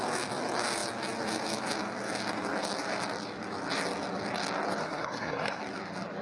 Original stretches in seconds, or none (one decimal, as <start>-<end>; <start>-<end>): 0.0-4.8; 5.6-6.2